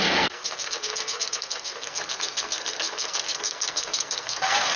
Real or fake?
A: fake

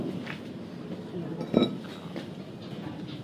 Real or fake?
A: real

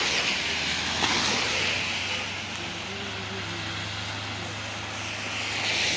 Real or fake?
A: real